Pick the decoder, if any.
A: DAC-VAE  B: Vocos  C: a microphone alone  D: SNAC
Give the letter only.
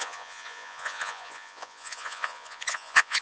B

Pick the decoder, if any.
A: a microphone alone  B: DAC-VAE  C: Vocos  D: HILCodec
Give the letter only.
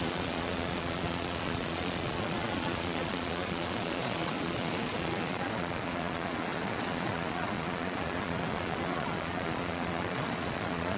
C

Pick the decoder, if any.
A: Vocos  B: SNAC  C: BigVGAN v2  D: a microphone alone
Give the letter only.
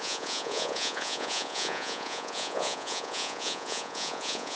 A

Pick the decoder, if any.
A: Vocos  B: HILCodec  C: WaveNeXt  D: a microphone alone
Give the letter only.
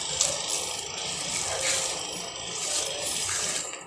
D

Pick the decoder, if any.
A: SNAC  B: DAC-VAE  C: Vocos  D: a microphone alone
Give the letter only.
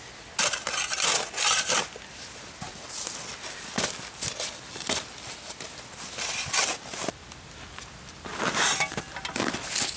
D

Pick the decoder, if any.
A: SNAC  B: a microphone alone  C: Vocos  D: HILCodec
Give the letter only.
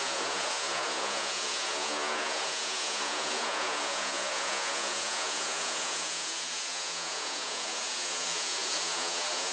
C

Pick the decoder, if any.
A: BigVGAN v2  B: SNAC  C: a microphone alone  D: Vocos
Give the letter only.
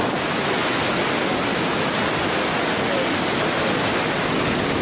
C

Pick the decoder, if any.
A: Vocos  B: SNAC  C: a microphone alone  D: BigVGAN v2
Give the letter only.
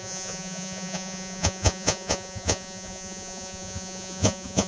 A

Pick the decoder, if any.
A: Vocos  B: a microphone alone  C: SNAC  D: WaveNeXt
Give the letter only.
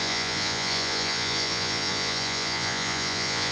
A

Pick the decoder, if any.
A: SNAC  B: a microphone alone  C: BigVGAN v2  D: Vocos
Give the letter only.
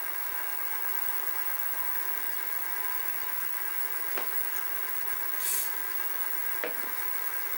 D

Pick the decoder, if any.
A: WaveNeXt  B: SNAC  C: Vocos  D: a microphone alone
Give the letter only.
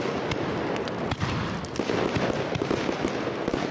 D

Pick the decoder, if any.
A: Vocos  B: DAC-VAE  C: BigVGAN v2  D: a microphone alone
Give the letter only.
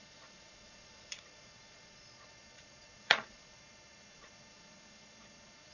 A